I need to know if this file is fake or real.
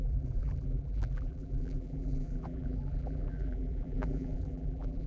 fake